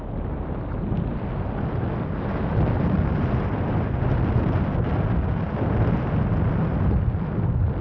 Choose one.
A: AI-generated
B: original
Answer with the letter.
B